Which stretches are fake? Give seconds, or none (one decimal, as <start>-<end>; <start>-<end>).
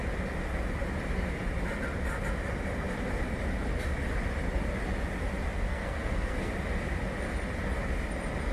5.7-6.5